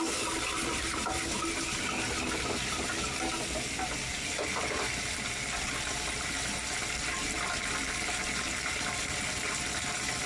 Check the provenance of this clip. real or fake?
real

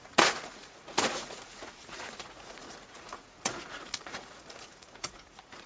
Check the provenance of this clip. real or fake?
fake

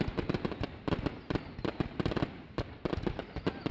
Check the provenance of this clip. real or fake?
real